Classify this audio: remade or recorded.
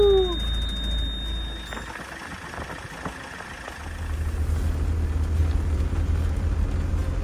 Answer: recorded